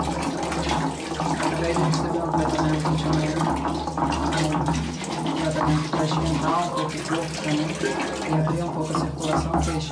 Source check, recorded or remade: recorded